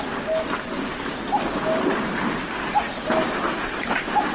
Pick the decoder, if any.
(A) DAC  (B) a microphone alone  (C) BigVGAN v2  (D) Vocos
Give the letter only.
B